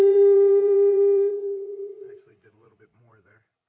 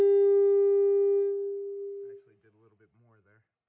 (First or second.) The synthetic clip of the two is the first